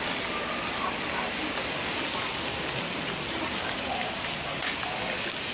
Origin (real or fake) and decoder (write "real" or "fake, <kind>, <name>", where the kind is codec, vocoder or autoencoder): real